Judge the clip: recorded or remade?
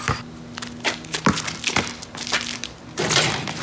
recorded